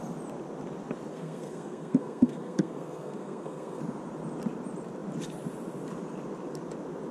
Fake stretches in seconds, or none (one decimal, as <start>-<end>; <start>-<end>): 1.1-3.8